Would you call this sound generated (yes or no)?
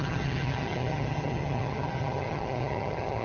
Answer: yes